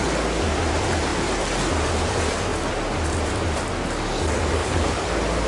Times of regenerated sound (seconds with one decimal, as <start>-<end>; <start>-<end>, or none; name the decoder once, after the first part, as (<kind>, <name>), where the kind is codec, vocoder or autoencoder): 4.6-5.1 (codec, HILCodec)